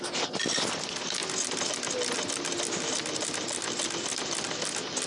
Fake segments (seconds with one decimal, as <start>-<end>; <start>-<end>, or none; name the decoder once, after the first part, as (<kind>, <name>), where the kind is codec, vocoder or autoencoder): none

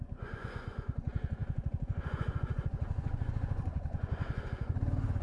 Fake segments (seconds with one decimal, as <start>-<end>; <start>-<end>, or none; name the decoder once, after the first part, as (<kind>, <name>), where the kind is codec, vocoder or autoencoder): 0.0-5.2 (vocoder, Vocos)

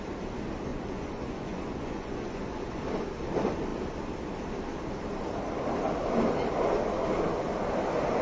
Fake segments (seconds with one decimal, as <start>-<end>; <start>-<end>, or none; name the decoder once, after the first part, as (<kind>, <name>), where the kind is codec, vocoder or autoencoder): 0.7-2.8 (vocoder, Vocos)

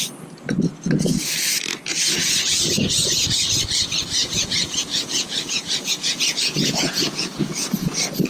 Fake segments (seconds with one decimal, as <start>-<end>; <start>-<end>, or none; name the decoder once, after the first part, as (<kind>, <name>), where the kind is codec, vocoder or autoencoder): 1.9-3.6 (vocoder, Vocos); 4.2-7.7